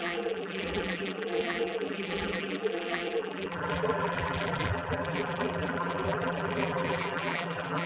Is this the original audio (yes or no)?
no